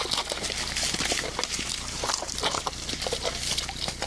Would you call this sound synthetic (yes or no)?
no